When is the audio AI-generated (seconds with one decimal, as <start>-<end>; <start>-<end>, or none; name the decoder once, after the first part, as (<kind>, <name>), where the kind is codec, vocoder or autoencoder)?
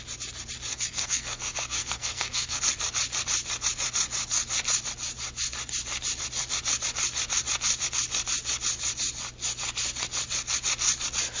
0.7-2.6 (codec, SNAC)